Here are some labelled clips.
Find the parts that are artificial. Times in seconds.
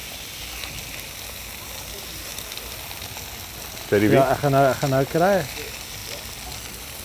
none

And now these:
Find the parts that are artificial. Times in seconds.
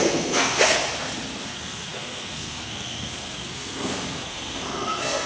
0.0-0.8; 1.4-5.3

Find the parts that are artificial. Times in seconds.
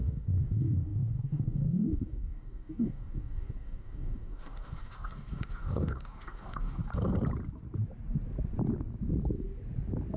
0.0-6.8